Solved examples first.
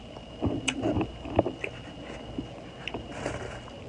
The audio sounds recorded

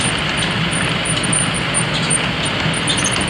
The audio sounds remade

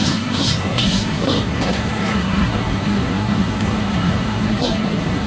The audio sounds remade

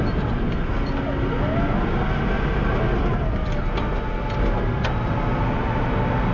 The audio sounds recorded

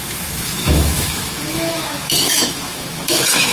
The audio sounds remade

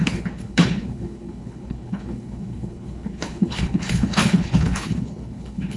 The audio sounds remade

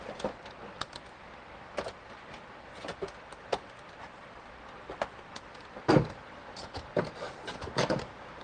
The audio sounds recorded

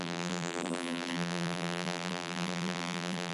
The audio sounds remade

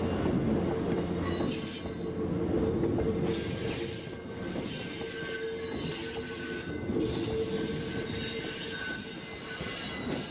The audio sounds recorded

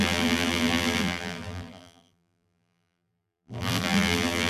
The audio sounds remade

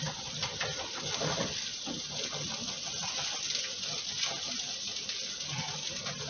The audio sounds recorded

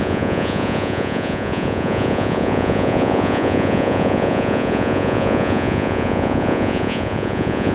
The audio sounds remade